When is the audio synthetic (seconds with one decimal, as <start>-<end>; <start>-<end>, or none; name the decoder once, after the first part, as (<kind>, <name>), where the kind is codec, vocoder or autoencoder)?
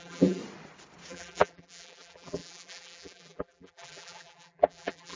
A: 0.0-0.4 (vocoder, BigVGAN v2); 1.1-5.2